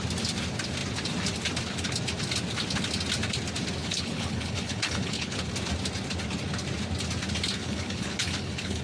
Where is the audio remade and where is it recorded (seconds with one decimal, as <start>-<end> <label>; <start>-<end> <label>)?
0.0-3.8 recorded; 3.8-5.5 remade; 5.5-7.6 recorded; 7.6-8.8 remade